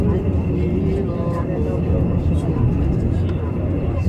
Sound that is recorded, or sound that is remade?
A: recorded